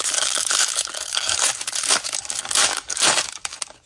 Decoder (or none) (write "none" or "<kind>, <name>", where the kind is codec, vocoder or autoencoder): codec, DAC